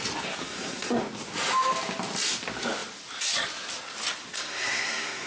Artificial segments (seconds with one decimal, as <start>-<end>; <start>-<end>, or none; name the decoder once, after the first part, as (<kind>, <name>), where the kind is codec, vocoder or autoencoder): 0.4-1.0 (codec, SNAC); 4.2-5.3